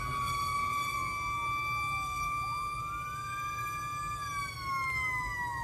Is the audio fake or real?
real